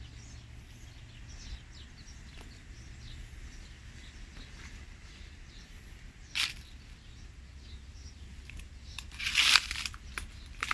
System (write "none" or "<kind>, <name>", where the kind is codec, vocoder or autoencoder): none